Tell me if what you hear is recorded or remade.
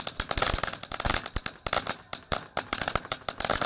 recorded